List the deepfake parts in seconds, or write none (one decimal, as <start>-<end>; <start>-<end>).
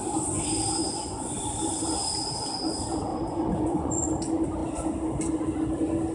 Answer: 0.8-1.4; 3.1-4.1